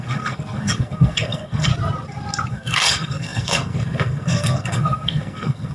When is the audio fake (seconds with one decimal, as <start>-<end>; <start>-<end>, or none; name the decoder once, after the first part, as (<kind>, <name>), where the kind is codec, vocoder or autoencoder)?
0.0-1.7 (codec, SNAC); 2.5-5.7

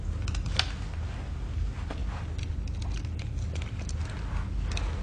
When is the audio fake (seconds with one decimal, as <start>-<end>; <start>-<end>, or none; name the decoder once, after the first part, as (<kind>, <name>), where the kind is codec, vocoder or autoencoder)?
none

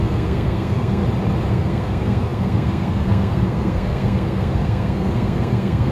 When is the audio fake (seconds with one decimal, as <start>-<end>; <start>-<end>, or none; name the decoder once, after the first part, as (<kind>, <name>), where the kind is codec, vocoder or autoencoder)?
0.0-1.0 (codec, SNAC); 1.5-5.9

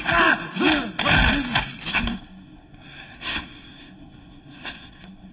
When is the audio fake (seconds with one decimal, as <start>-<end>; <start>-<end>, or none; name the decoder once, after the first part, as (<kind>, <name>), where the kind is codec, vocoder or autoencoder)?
1.9-5.3 (codec, SNAC)

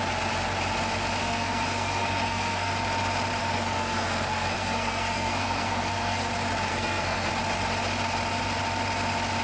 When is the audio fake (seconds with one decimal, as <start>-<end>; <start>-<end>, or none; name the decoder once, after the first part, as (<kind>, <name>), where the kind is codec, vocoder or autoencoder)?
1.2-2.7 (codec, SNAC); 3.4-6.3; 6.7-7.3

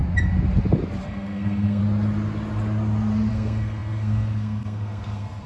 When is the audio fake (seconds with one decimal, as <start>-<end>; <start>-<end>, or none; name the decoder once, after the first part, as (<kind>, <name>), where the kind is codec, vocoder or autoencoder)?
1.0-1.8 (codec, SNAC); 3.3-5.5

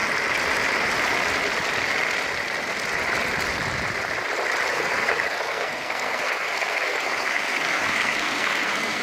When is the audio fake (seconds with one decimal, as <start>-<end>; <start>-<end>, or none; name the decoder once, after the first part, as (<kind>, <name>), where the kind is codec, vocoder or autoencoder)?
4.7-9.0 (codec, SNAC)

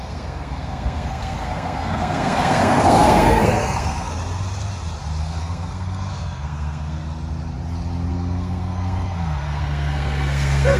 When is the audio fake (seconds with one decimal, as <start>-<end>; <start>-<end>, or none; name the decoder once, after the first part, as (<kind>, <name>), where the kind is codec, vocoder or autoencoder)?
0.0-4.1 (codec, SNAC); 5.2-7.0; 8.1-10.8